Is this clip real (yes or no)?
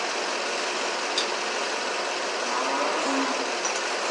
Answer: yes